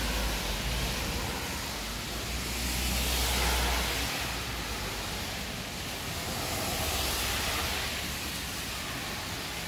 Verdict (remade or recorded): recorded